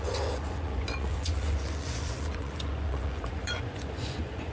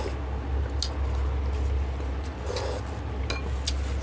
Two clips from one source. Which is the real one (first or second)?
second